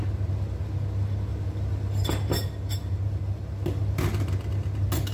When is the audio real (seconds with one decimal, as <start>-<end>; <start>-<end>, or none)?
0.0-5.1